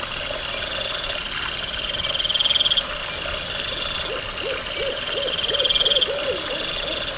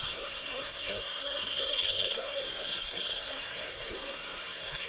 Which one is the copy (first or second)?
second